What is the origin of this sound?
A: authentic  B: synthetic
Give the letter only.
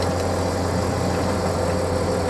A